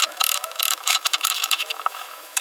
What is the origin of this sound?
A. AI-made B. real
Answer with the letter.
A